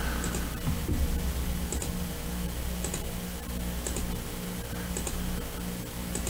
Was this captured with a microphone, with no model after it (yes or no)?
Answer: yes